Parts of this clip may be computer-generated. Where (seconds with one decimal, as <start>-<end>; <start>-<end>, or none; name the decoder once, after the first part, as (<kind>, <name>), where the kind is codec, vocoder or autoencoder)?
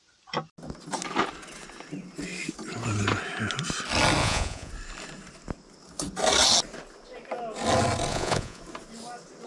4.2-4.7 (vocoder, Vocos); 8.1-8.6